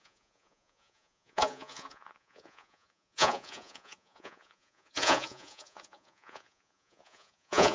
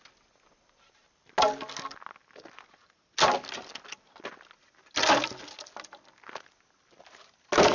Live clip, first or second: second